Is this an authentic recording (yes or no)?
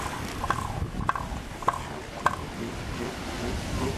yes